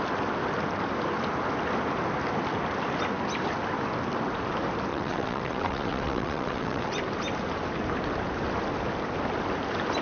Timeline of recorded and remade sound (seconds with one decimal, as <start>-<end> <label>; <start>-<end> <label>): 0.0-4.9 recorded; 4.9-6.9 remade; 6.9-10.0 recorded